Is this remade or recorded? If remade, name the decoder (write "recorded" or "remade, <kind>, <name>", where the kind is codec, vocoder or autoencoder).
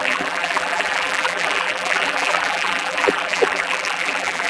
remade, vocoder, BigVGAN v2